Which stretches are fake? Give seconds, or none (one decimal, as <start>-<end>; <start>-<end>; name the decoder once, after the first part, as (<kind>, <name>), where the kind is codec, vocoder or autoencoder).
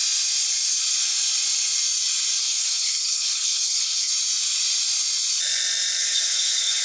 2.4-4.1 (codec, HILCodec); 6.0-6.8